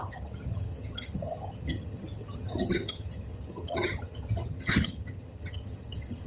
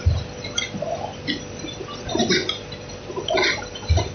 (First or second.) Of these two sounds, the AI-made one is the first